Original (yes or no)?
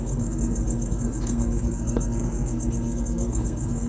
no